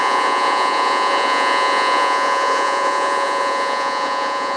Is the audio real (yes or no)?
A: no